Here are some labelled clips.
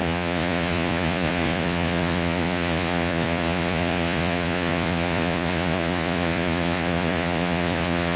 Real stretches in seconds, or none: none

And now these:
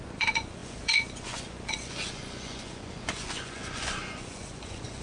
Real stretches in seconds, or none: none